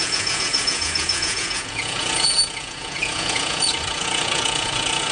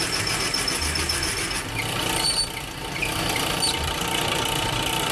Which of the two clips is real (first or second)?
second